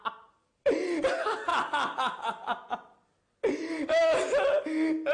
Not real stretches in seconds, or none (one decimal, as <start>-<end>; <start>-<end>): 0.4-1.1; 1.5-4.6